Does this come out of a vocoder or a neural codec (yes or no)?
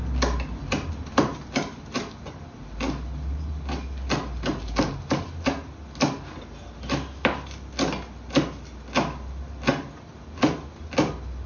no